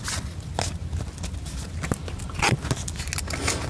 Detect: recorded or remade recorded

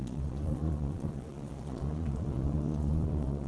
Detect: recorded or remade remade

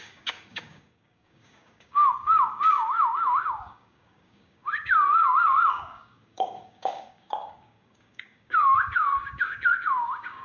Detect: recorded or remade remade